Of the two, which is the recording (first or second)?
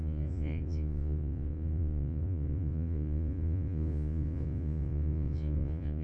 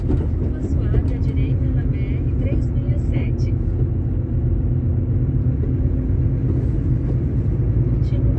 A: second